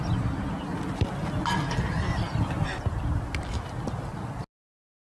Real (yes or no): yes